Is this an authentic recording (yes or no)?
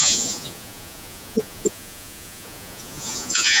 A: no